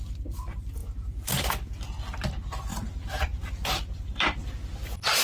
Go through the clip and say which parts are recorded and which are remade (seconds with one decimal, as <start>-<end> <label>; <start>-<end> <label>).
0.0-0.8 recorded; 0.8-1.6 remade; 1.6-2.7 recorded; 2.7-4.5 remade; 4.5-5.2 recorded